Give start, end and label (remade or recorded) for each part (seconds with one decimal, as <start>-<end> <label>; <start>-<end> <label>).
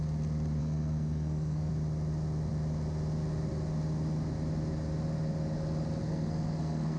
0.0-0.6 recorded; 0.6-1.7 remade; 1.7-6.0 recorded; 6.0-7.0 remade